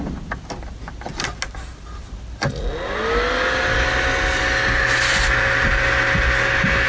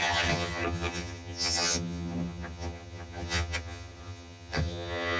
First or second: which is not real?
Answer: second